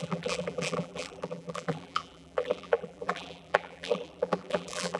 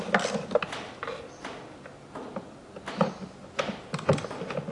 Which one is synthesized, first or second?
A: first